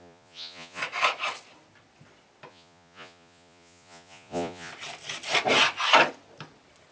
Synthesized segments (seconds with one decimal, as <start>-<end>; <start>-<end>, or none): 0.0-0.8; 2.5-4.7

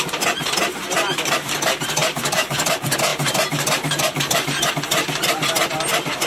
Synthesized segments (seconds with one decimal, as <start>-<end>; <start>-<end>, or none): 2.0-2.7; 3.1-4.7

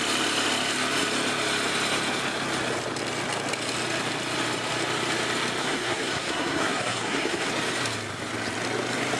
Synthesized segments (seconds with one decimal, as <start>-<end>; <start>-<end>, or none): 5.6-7.5

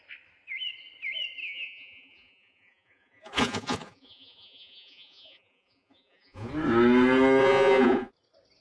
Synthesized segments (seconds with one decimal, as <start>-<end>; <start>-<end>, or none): 1.4-6.5; 7.4-8.1

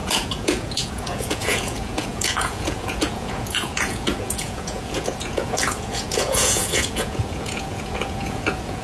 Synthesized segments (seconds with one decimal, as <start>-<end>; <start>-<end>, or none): 0.0-8.8